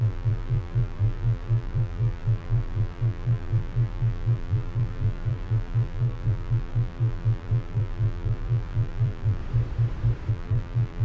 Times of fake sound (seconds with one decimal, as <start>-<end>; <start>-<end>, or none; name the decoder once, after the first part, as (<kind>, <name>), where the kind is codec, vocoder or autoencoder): 0.0-9.4 (vocoder, BigVGAN v2); 10.3-11.0